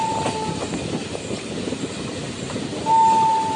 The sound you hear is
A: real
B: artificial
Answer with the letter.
A